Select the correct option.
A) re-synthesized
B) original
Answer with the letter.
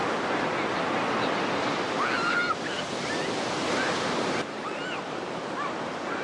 B